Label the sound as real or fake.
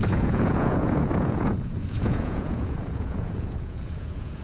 fake